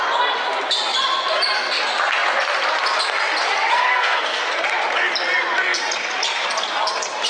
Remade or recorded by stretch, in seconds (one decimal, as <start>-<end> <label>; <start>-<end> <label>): 0.0-3.7 recorded; 3.7-4.4 remade; 4.4-7.3 recorded